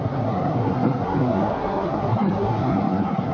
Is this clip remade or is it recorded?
remade